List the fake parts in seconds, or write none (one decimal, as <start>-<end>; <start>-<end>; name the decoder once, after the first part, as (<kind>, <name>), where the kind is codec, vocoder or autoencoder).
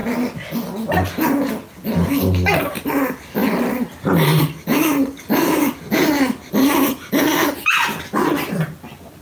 none